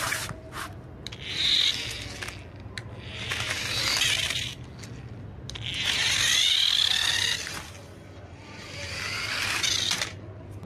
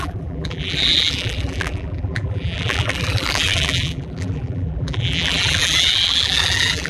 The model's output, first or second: second